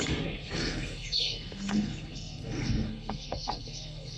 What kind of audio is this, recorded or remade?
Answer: remade